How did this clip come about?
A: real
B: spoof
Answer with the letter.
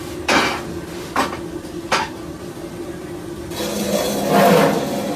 A